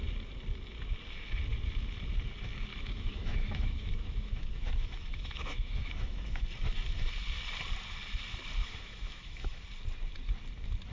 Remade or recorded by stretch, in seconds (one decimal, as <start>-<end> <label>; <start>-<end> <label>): 0.0-2.7 recorded; 2.7-6.4 remade; 6.4-8.6 recorded; 8.6-9.6 remade; 9.6-10.9 recorded